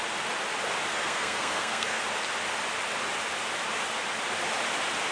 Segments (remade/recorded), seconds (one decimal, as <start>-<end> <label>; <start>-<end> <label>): 0.0-0.9 recorded; 0.9-2.0 remade; 2.0-5.1 recorded